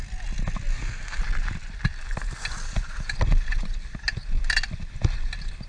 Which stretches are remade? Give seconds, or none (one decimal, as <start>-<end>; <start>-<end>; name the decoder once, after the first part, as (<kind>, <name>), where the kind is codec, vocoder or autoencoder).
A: 0.7-1.2 (codec, SNAC)